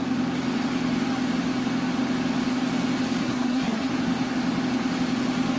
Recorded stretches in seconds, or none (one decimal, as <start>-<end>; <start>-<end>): 0.0-3.2; 3.9-5.6